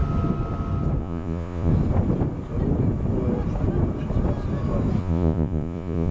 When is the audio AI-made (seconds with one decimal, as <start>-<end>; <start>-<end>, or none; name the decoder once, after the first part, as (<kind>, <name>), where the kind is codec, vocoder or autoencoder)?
1.0-1.7 (vocoder, Vocos); 5.0-6.1

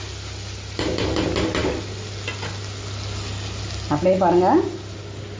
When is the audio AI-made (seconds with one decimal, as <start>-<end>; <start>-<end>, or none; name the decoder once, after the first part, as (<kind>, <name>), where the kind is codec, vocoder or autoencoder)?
none

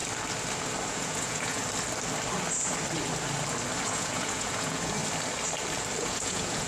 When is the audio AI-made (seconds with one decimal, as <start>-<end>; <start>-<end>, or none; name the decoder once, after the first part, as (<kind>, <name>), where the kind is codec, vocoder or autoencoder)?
0.9-1.6 (vocoder, Vocos); 3.8-5.0; 6.0-6.7

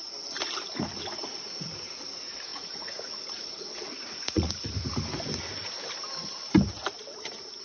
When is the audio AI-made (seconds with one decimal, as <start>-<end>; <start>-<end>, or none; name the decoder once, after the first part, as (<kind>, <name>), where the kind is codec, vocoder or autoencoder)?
2.5-4.5 (vocoder, Vocos)

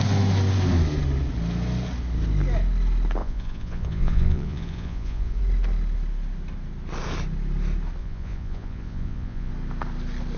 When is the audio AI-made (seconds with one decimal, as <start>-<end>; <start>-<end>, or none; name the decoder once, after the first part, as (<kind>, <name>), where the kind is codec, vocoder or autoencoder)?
3.2-5.4 (vocoder, Vocos); 8.0-9.5

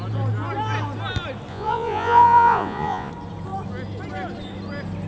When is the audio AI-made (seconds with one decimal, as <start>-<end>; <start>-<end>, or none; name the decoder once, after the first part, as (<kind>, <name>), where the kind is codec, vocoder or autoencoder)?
1.5-3.1 (vocoder, Vocos)

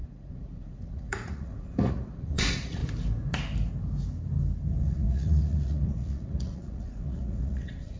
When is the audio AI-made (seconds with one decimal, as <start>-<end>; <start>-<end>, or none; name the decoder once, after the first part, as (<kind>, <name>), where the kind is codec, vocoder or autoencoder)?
0.0-2.8 (vocoder, Vocos); 4.8-8.0

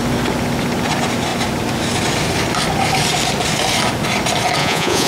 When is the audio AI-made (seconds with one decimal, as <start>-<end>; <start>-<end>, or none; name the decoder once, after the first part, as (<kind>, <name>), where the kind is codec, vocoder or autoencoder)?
4.6-5.1 (vocoder, Vocos)